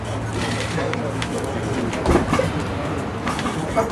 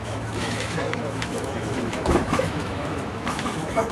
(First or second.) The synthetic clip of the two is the second